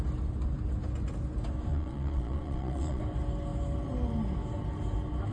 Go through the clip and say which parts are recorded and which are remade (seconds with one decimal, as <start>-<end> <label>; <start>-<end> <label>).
0.0-1.7 recorded; 1.7-3.0 remade; 3.0-5.3 recorded

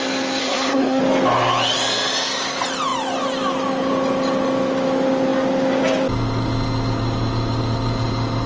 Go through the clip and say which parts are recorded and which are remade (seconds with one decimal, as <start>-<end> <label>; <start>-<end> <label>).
0.0-0.4 recorded; 0.4-1.0 remade; 1.0-8.5 recorded

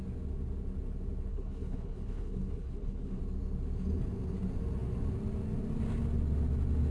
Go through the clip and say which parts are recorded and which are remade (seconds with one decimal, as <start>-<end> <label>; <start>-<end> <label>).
0.0-1.3 recorded; 1.3-3.2 remade; 3.2-6.9 recorded

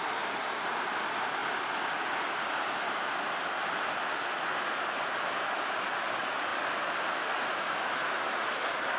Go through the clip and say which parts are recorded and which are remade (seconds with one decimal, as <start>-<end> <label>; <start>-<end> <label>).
0.0-9.0 recorded